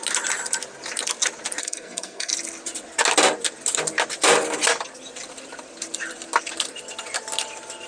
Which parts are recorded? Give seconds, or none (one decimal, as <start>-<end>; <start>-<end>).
0.0-1.6; 2.3-7.9